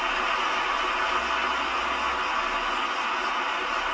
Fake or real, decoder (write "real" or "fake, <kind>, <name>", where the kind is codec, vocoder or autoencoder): real